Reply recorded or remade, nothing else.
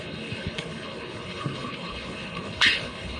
remade